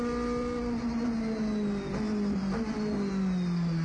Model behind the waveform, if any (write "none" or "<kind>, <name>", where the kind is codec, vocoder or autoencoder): none